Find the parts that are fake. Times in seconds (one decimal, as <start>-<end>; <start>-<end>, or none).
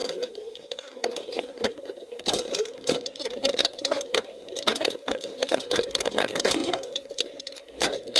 0.0-8.2